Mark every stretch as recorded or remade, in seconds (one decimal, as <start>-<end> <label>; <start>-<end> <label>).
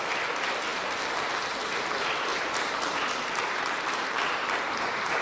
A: 0.0-2.3 recorded; 2.3-5.2 remade